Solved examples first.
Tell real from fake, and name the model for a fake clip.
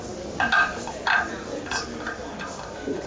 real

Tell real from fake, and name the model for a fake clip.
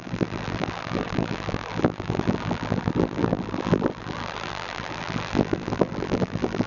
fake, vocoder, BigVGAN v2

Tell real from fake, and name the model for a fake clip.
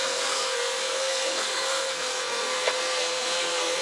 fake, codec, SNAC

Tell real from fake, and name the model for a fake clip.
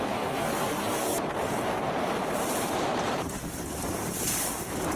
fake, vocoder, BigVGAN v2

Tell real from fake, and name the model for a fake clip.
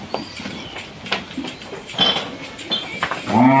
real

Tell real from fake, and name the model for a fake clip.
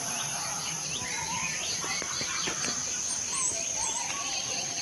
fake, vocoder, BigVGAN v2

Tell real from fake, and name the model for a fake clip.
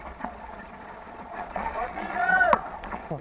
fake, vocoder, Vocos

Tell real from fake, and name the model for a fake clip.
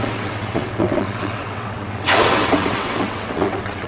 fake, vocoder, WaveNeXt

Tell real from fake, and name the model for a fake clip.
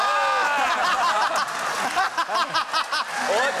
real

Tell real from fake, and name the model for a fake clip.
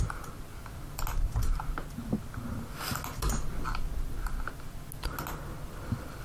real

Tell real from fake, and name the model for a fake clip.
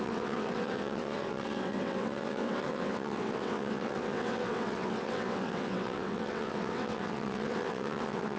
fake, vocoder, WaveNeXt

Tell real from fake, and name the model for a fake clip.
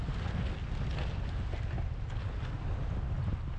real